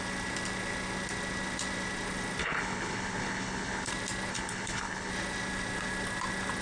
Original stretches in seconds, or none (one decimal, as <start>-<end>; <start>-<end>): 0.0-2.4; 3.9-4.3; 5.1-6.6